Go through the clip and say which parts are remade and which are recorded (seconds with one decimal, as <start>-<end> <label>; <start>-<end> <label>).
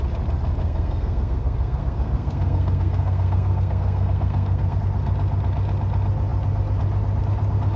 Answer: 0.0-0.6 recorded; 0.6-4.8 remade; 4.8-7.8 recorded